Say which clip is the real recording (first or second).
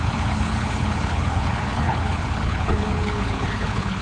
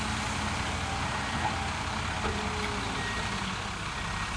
second